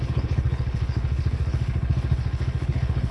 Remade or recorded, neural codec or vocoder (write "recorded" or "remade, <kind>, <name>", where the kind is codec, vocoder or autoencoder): remade, codec, HILCodec